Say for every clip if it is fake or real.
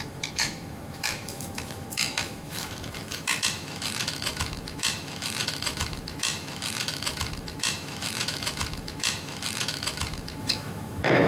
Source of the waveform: fake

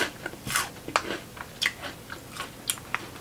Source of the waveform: real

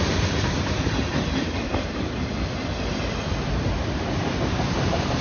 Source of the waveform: fake